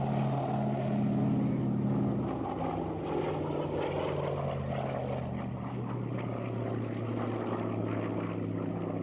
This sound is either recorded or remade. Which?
recorded